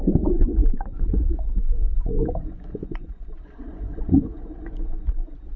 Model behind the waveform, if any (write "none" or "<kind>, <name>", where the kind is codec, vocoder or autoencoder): vocoder, Vocos